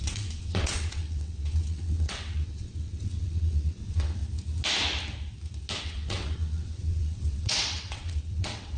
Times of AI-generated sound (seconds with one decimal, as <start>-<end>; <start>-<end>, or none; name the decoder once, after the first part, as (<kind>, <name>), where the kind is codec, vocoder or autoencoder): 0.0-4.2 (vocoder, WaveNeXt); 5.8-8.8